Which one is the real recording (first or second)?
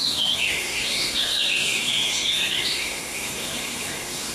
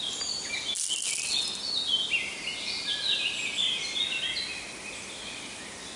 second